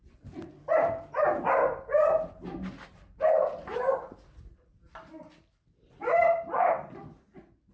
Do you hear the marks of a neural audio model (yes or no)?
yes